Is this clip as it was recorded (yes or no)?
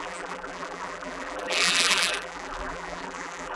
no